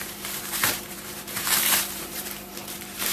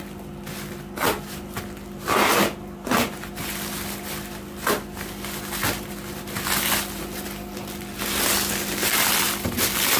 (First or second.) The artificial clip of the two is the first